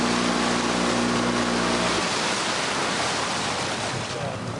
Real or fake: real